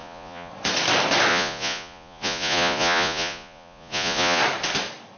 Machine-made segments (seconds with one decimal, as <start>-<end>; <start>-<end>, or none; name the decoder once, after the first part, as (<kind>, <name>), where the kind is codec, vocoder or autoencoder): 0.0-0.5 (vocoder, Vocos); 1.3-4.4